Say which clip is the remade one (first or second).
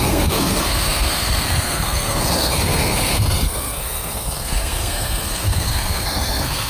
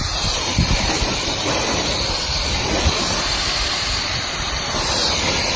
first